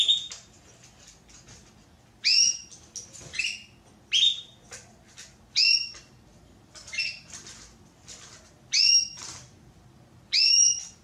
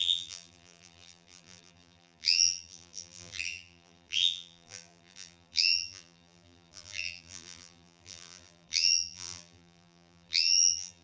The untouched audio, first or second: first